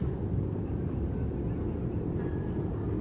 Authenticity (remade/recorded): recorded